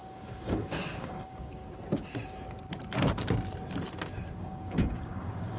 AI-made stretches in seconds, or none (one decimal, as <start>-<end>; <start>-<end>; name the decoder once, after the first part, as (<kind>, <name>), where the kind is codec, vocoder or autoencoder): 0.0-1.6 (codec, DAC); 4.4-5.6